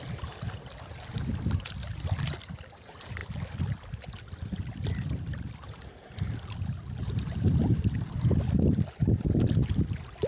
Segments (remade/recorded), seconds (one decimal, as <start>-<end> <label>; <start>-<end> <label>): 0.0-10.3 recorded